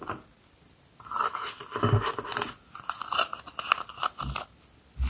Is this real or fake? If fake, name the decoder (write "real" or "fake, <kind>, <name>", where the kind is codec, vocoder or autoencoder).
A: real